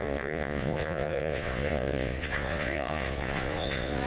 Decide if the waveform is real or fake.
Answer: fake